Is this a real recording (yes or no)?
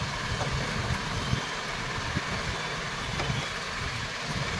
yes